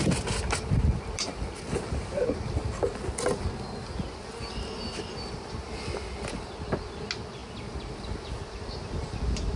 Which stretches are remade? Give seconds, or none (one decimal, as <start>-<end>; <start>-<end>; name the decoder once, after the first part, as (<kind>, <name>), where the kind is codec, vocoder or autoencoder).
none